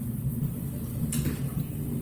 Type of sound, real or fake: real